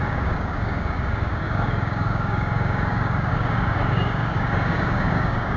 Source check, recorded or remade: remade